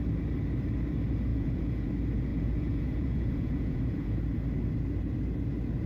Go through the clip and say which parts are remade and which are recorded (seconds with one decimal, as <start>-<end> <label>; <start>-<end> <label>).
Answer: 0.0-1.3 recorded; 1.3-1.9 remade; 1.9-2.3 recorded; 2.3-4.2 remade; 4.2-5.9 recorded

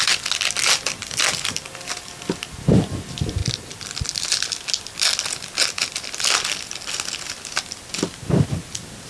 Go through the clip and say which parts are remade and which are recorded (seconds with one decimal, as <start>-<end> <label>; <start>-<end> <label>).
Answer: 0.0-9.1 recorded

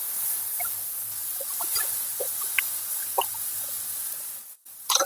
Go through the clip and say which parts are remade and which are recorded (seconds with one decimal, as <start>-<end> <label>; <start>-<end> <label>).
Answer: 0.0-5.1 recorded

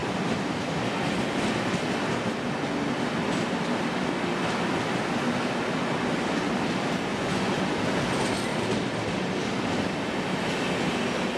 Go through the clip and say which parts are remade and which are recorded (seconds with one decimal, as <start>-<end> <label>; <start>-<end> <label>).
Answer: 0.0-7.1 recorded; 7.1-7.6 remade; 7.6-11.4 recorded